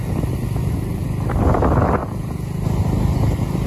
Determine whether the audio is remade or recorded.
recorded